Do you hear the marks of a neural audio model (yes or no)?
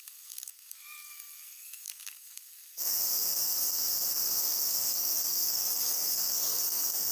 yes